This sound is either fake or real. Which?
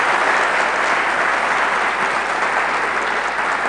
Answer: real